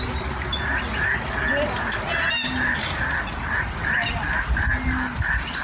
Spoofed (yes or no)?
no